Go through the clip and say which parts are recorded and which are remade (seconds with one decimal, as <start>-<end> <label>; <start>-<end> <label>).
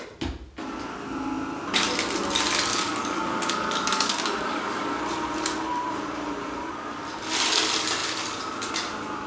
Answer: 0.0-2.7 recorded; 2.7-5.0 remade; 5.0-9.3 recorded